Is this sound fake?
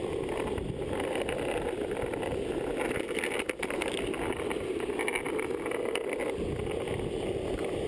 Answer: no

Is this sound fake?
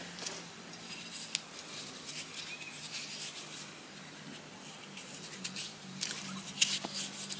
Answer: no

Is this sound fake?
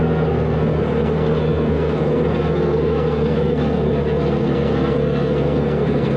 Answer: yes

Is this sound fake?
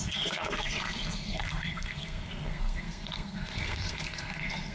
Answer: yes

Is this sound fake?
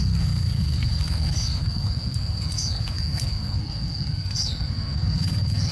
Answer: yes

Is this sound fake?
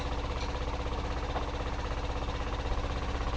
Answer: no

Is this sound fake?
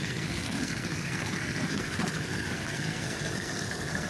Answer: yes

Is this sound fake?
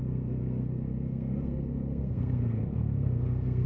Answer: yes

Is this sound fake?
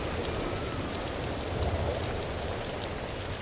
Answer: no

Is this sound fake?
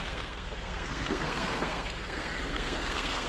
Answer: yes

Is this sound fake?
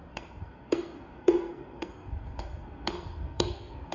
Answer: yes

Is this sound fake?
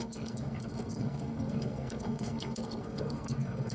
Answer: yes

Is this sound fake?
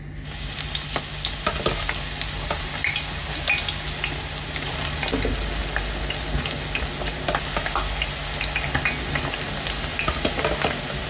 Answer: no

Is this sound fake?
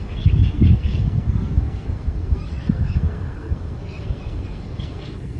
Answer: yes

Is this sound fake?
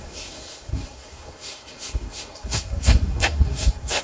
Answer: yes